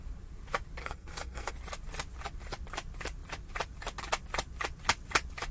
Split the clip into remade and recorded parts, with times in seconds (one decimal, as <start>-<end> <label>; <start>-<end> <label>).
0.0-0.8 recorded; 0.8-1.5 remade; 1.5-5.5 recorded